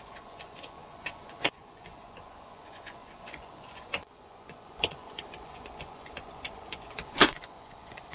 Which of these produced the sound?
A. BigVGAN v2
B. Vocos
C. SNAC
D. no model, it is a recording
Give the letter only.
B